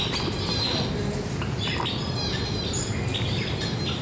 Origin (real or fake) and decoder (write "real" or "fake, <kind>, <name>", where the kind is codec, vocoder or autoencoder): real